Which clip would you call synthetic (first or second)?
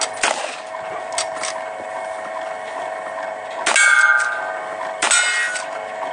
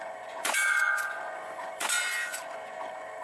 second